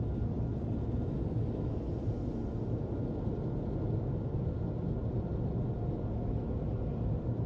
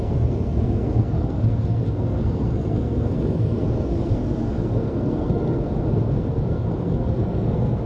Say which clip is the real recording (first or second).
first